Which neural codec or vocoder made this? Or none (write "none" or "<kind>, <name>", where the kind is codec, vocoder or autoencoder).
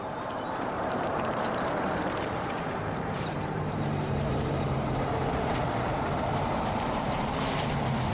vocoder, BigVGAN v2